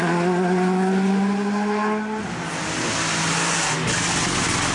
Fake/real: real